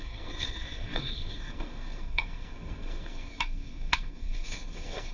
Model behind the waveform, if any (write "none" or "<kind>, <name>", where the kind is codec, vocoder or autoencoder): codec, SNAC